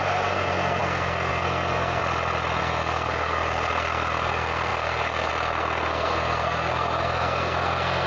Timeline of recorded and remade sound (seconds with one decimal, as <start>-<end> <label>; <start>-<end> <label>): 0.0-2.0 remade; 2.0-2.6 recorded; 2.6-8.1 remade